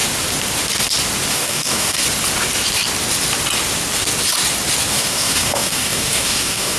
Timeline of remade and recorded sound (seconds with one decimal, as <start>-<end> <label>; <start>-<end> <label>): 0.0-1.3 recorded; 1.3-2.0 remade; 2.0-4.9 recorded; 4.9-6.8 remade

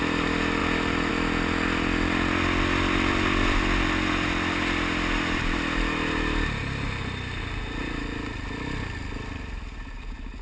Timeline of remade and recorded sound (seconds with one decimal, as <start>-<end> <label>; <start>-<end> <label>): 0.0-10.4 recorded